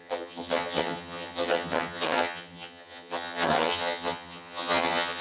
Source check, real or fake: fake